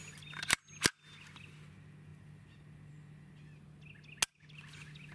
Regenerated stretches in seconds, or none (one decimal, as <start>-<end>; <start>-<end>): none

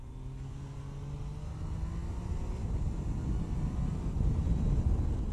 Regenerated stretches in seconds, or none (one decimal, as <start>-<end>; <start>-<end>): none